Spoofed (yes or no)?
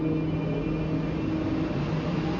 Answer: no